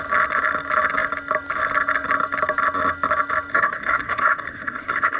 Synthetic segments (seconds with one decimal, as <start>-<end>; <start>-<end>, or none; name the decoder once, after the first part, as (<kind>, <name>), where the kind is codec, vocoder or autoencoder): 3.5-5.2 (codec, SNAC)